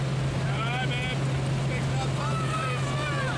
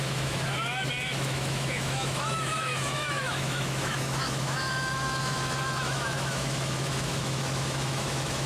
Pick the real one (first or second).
first